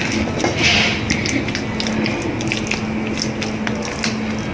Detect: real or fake real